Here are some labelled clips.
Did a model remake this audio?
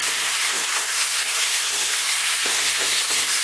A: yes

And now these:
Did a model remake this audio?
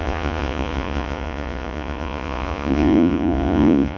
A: yes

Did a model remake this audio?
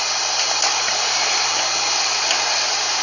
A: no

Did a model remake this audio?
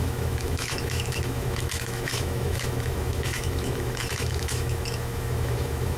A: yes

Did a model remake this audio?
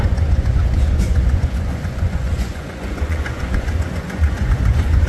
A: yes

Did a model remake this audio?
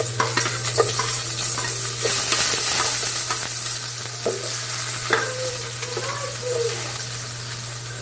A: no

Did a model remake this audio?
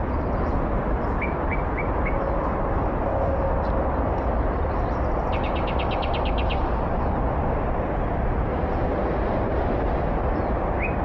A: no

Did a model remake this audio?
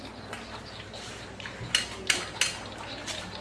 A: no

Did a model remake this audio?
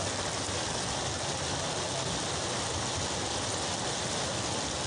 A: no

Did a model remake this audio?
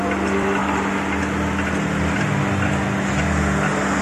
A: no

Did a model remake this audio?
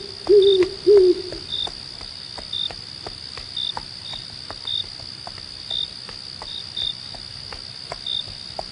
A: no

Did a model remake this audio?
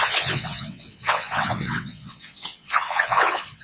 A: yes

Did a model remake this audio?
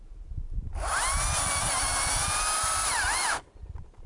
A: no